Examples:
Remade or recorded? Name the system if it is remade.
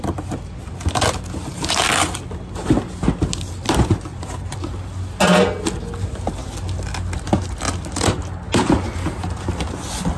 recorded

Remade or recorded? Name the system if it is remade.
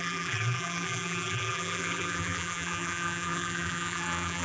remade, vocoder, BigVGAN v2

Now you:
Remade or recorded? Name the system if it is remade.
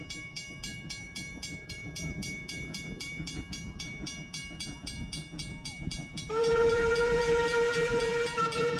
remade, vocoder, BigVGAN v2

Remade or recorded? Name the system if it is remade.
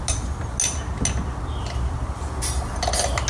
recorded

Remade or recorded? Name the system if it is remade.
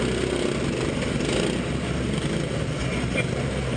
recorded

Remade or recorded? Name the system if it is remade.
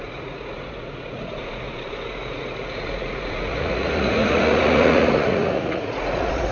remade, vocoder, Vocos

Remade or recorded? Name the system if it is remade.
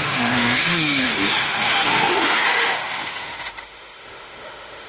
remade, autoencoder, DAC-VAE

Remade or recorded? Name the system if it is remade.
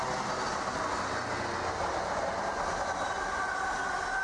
recorded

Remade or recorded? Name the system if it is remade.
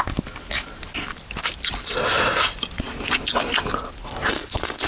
recorded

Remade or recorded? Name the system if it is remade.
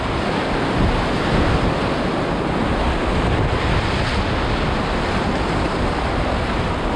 recorded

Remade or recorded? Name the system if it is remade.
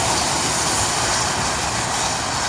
recorded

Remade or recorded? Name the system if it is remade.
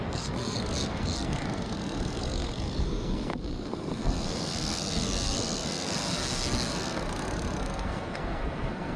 remade, codec, SNAC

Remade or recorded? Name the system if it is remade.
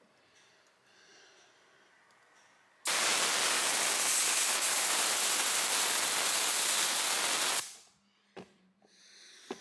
recorded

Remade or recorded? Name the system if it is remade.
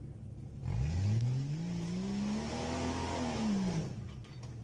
recorded